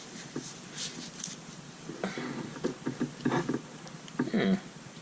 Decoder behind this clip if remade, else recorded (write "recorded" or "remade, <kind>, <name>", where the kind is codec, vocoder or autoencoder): remade, vocoder, BigVGAN v2